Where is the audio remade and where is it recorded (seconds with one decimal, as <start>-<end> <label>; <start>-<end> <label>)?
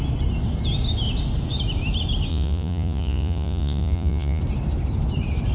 0.0-2.3 recorded; 2.3-4.4 remade; 4.4-5.5 recorded